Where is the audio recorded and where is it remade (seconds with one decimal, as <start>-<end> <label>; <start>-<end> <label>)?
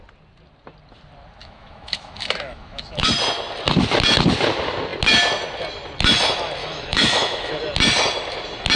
0.0-1.4 recorded; 1.4-3.1 remade; 3.1-6.6 recorded; 6.6-7.5 remade; 7.5-8.8 recorded